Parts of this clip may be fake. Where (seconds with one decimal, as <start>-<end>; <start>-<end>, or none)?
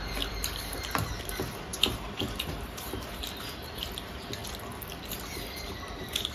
0.0-4.4; 5.0-6.3